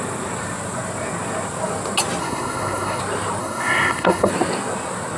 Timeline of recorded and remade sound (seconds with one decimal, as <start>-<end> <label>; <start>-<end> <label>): 0.0-2.2 recorded; 2.2-3.0 remade; 3.0-3.4 recorded; 3.4-4.3 remade; 4.3-5.2 recorded